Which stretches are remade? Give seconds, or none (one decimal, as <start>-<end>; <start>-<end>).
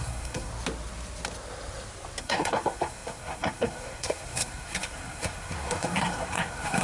0.0-0.5; 2.2-6.8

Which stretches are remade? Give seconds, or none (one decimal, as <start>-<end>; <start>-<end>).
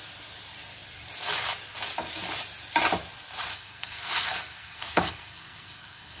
3.5-6.2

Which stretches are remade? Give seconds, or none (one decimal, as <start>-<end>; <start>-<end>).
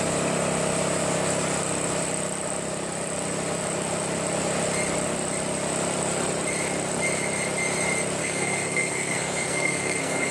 8.2-10.3